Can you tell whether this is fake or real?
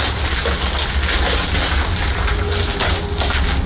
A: real